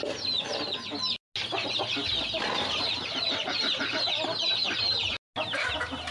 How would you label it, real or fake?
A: real